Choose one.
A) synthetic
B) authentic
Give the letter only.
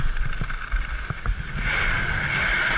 B